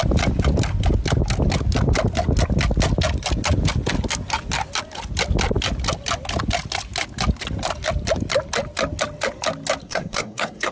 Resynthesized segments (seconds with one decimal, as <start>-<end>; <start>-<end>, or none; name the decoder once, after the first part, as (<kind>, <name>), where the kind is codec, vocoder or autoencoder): 9.8-10.7 (codec, SNAC)